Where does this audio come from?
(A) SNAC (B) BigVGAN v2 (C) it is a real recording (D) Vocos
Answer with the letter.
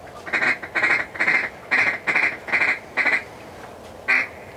C